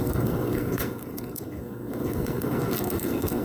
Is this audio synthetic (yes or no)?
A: yes